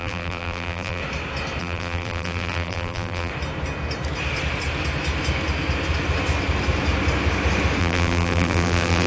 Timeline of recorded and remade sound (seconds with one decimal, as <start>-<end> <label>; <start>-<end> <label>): 0.0-1.0 remade; 1.0-1.6 recorded; 1.6-3.3 remade; 3.3-7.8 recorded; 7.8-9.1 remade